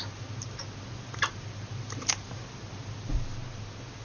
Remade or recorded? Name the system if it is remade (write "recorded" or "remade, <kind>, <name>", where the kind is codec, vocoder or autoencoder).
recorded